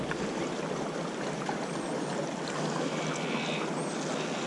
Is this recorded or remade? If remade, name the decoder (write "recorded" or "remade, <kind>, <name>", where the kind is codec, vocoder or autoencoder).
recorded